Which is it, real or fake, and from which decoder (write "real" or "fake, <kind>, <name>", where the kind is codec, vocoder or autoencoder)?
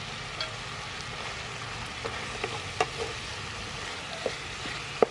real